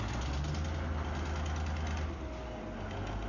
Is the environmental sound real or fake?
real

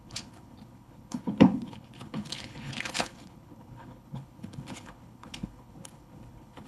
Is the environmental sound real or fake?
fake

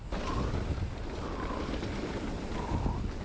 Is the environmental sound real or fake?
real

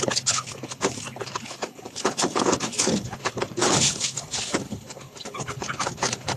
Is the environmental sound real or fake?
fake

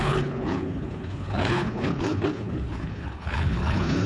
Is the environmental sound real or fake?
fake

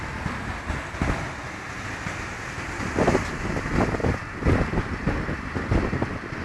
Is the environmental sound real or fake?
real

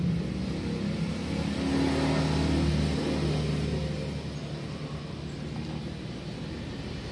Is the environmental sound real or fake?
real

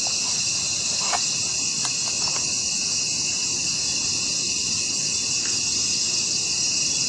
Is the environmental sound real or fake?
real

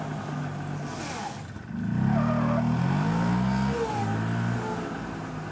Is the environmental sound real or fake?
real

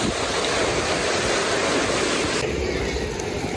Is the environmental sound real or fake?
real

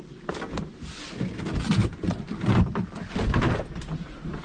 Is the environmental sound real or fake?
real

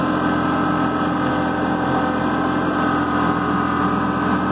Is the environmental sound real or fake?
real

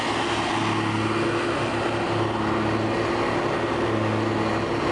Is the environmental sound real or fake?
real